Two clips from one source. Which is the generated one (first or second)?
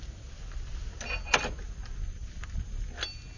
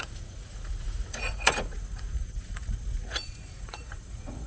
second